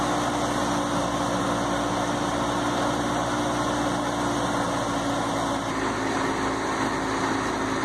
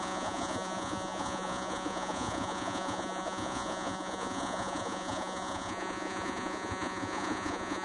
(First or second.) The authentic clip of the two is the first